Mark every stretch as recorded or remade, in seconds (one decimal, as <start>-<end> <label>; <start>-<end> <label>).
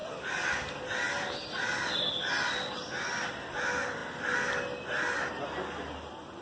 0.0-6.4 recorded